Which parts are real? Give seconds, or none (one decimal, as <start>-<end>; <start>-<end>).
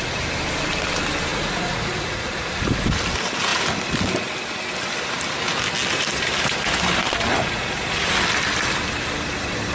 0.0-1.3; 2.5-7.3; 8.1-9.7